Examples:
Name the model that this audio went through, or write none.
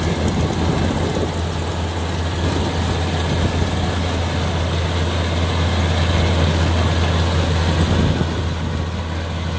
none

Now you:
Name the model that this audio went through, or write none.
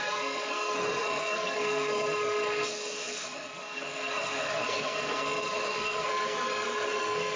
codec, SNAC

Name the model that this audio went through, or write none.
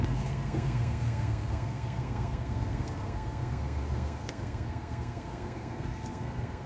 codec, SNAC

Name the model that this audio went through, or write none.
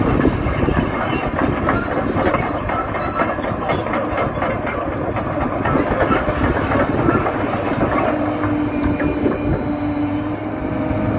none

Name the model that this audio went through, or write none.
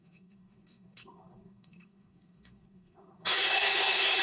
codec, SNAC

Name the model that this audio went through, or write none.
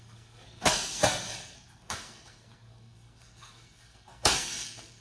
codec, SNAC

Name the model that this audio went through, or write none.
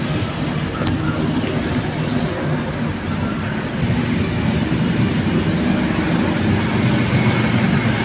none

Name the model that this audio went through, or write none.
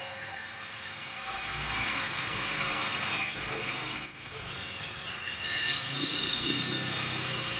codec, SNAC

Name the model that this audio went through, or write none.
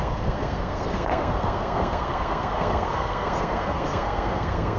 codec, SNAC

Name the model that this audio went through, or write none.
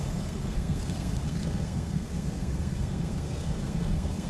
codec, SNAC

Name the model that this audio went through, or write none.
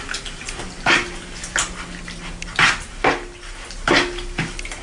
none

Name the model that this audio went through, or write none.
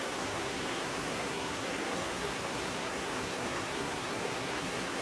codec, SNAC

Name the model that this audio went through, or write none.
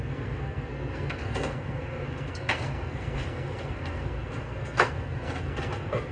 codec, SNAC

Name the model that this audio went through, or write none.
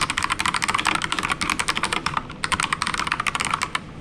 none